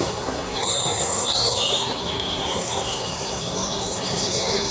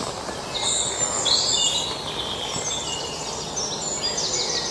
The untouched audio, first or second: second